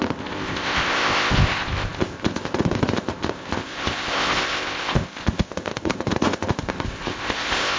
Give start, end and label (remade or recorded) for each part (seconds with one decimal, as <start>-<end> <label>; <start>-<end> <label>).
0.0-7.8 remade